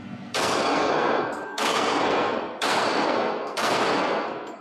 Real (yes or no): no